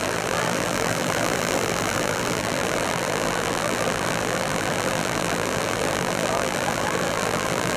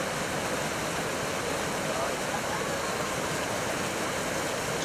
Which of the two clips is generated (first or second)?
first